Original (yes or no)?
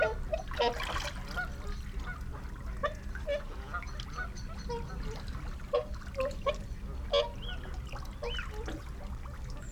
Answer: yes